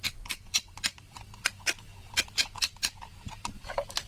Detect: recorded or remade remade